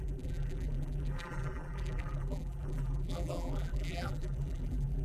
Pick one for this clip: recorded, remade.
remade